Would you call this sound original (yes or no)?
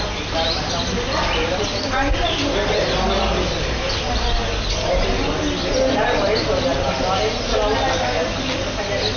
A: yes